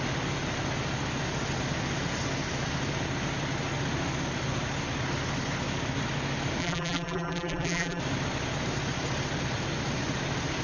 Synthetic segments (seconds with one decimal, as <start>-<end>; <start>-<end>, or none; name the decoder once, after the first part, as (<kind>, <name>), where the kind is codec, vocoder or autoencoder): 6.6-8.0 (vocoder, BigVGAN v2)